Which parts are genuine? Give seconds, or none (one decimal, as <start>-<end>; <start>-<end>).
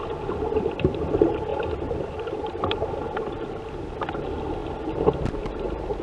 0.0-1.5; 3.6-6.0